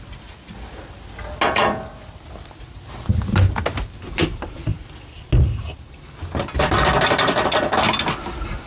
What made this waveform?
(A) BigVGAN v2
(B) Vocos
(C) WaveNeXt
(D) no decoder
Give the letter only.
D